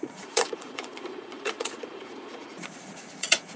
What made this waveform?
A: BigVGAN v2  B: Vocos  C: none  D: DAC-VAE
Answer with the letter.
B